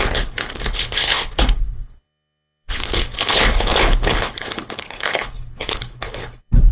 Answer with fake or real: fake